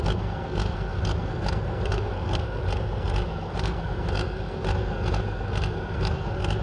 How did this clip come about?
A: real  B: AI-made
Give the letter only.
B